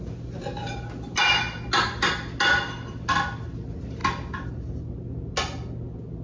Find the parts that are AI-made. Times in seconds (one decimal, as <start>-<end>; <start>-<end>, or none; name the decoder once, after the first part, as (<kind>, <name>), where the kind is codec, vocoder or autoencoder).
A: none